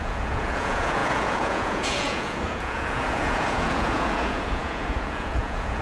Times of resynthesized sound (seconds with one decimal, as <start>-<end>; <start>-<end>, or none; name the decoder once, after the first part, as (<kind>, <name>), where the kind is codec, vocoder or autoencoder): 0.0-5.8 (vocoder, Vocos)